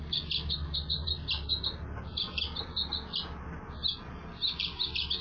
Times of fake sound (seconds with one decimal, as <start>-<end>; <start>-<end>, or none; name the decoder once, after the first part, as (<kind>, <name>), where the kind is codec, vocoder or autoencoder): none